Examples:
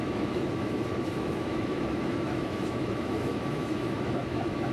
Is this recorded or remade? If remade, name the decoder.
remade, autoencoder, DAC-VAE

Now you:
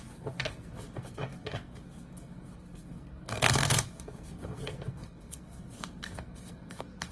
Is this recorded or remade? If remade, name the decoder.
remade, codec, SNAC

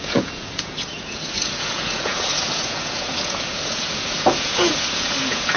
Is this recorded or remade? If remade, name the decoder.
remade, vocoder, Vocos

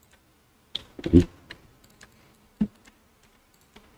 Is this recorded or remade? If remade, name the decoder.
recorded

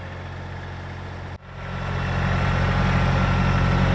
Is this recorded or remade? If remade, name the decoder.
recorded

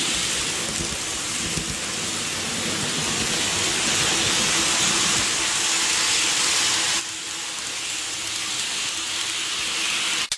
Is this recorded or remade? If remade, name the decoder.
recorded